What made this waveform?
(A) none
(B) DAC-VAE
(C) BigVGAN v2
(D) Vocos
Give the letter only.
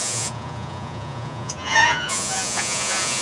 D